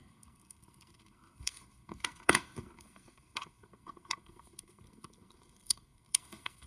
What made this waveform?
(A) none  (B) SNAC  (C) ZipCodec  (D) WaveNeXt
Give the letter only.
B